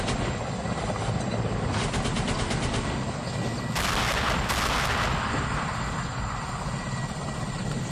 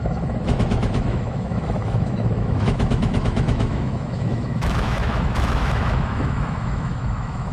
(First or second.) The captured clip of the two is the first